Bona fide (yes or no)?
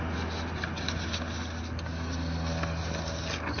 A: yes